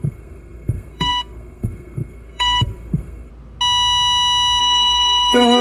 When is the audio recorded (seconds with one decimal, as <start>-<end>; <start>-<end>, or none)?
3.3-4.6